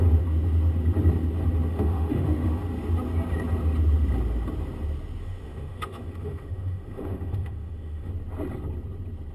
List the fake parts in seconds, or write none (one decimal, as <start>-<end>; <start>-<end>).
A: 1.7-2.6; 5.2-8.1